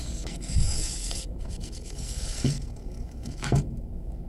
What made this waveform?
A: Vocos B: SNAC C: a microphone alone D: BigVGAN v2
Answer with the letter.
B